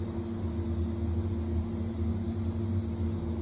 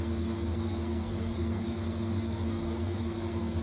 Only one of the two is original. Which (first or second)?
first